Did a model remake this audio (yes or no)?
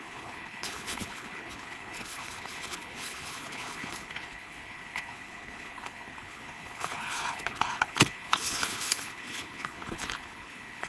yes